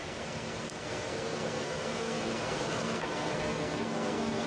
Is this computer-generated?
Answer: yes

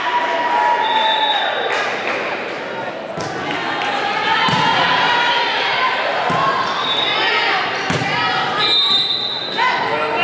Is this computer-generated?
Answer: no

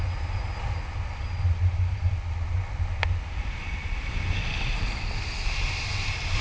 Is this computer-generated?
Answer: no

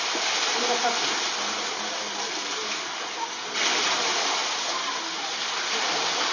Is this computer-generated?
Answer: no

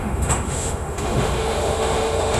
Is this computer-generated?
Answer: yes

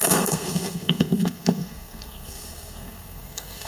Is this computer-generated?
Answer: yes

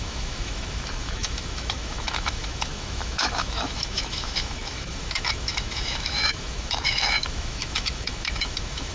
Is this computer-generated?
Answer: yes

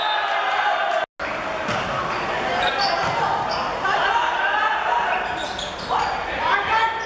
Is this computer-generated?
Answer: no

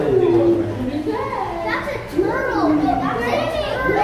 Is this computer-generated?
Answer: no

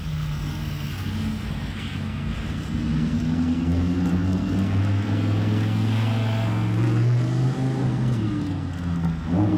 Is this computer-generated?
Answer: yes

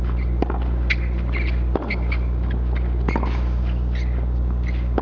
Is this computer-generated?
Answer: no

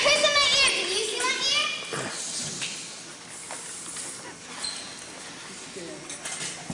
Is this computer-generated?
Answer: no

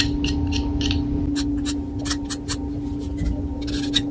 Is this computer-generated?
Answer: no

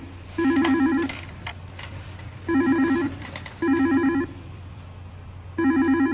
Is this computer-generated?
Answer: yes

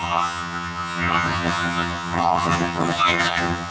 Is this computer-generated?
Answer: yes